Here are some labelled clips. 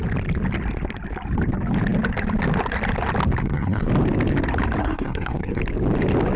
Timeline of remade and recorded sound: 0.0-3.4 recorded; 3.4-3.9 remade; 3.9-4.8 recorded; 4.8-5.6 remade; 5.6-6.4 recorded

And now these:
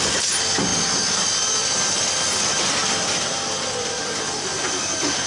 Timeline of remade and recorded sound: 0.0-5.3 recorded

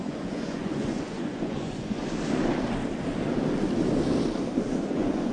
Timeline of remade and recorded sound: 0.0-2.0 remade; 2.0-4.8 recorded; 4.8-5.3 remade

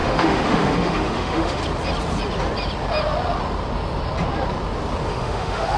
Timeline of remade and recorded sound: 0.0-1.6 remade; 1.6-5.1 recorded; 5.1-5.8 remade

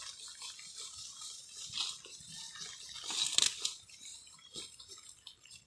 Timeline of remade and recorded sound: 0.0-5.7 recorded

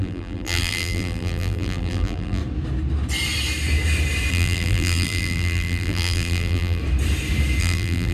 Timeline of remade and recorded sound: 0.0-2.4 remade; 2.4-4.3 recorded; 4.3-6.8 remade; 6.8-7.6 recorded; 7.6-8.1 remade